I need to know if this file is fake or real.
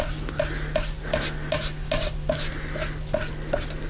real